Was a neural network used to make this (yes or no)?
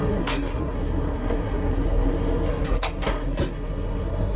yes